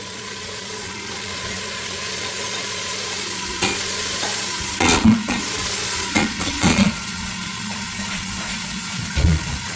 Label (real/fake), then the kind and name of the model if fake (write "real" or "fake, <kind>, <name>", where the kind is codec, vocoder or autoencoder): fake, vocoder, Vocos